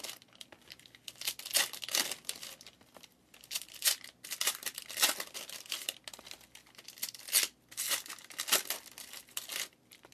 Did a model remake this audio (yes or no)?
no